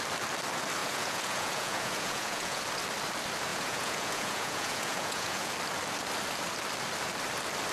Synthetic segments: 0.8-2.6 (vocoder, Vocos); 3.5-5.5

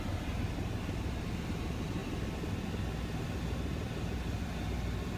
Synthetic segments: none

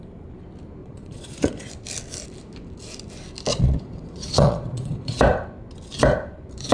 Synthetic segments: 0.8-1.7 (vocoder, Vocos); 3.5-5.2

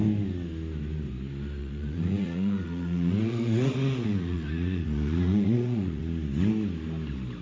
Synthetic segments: 1.6-6.0 (vocoder, Vocos)

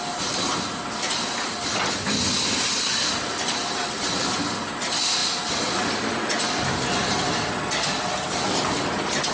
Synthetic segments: none

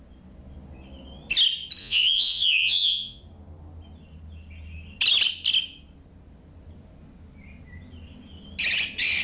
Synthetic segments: 1.8-3.2 (vocoder, Vocos)

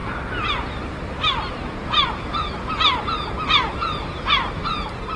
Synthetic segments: none

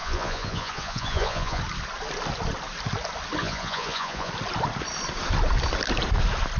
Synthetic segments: 0.0-1.6 (vocoder, Vocos); 3.4-4.3